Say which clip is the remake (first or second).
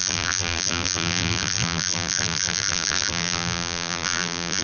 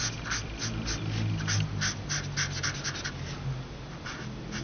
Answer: first